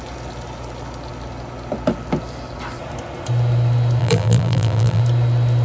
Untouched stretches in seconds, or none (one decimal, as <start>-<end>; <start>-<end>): 0.0-4.0; 5.0-5.6